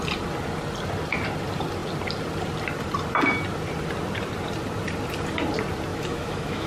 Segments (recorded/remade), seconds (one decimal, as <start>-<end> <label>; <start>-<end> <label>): 0.0-5.9 recorded; 5.9-6.7 remade